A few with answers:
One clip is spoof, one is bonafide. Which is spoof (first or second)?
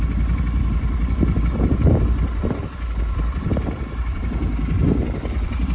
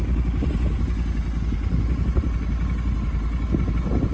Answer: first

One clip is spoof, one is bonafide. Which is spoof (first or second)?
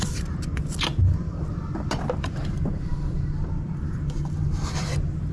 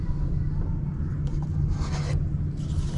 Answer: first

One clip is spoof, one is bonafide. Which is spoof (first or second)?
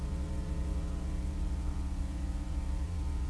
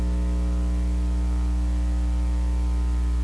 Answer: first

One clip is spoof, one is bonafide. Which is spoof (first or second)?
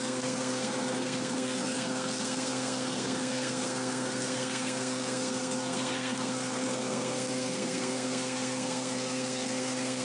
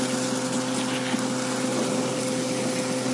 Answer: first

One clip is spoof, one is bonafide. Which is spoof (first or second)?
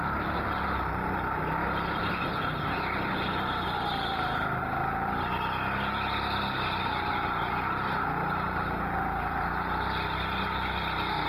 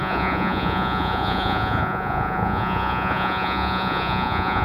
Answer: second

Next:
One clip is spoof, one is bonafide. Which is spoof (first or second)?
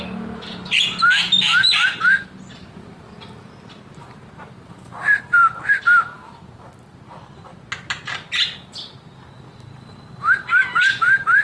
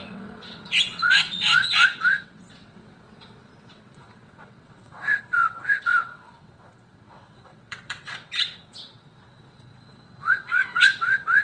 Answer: second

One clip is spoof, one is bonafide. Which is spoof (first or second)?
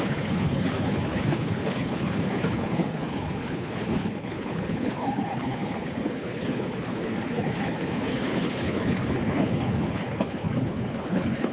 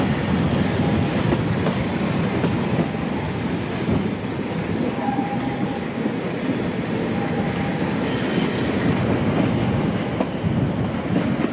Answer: first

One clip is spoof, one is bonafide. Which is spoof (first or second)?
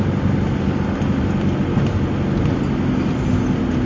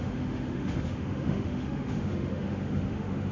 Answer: second